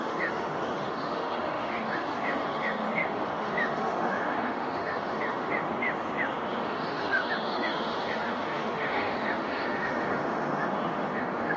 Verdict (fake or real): fake